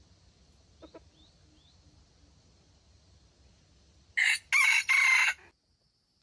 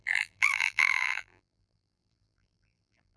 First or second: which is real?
first